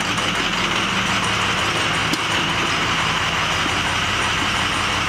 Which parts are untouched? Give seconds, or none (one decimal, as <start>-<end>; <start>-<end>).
0.0-5.1